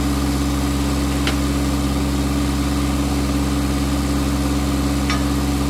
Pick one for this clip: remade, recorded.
recorded